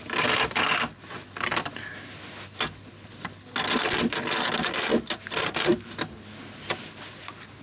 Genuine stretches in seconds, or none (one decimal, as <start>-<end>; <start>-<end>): 0.0-7.6